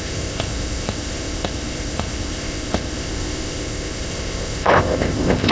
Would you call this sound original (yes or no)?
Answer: no